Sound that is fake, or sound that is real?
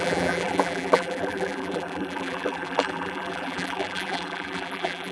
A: fake